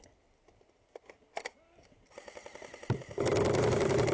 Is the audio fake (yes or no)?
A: no